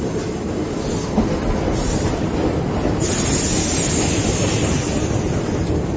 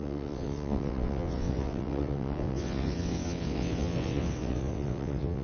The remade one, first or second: second